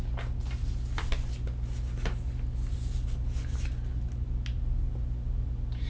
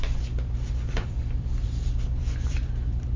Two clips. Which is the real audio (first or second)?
first